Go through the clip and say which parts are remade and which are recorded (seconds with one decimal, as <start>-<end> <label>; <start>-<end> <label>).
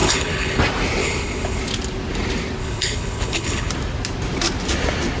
0.0-0.6 remade; 0.6-1.0 recorded; 1.0-1.6 remade; 1.6-2.6 recorded; 2.6-3.7 remade; 3.7-5.2 recorded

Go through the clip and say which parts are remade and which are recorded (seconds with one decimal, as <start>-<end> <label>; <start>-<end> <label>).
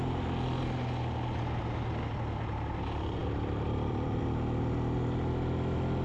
0.0-3.2 recorded; 3.2-4.2 remade; 4.2-6.0 recorded